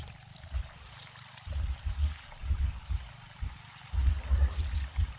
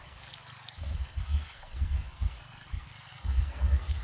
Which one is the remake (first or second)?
second